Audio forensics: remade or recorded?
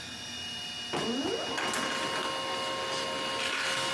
recorded